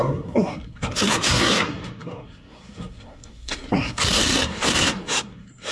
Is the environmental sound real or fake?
fake